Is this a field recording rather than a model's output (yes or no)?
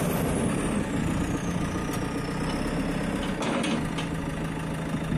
yes